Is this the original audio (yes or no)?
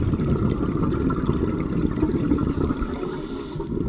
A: yes